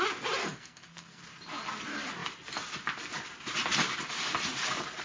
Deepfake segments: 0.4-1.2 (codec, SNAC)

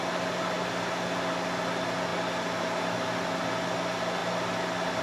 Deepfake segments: none

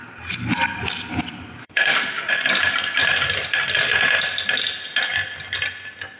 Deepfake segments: 1.6-2.3 (autoencoder, DAC-VAE)

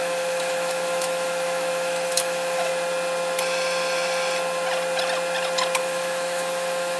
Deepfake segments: 0.0-2.7 (autoencoder, DAC-VAE); 5.8-7.0

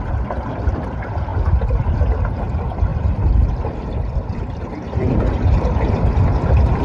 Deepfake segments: 0.0-1.3 (vocoder, BigVGAN v2); 2.3-6.8

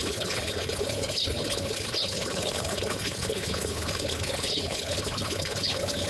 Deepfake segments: 0.0-6.1 (codec, HILCodec)